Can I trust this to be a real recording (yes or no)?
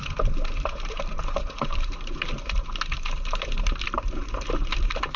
no